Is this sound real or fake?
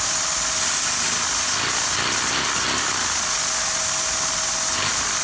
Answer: real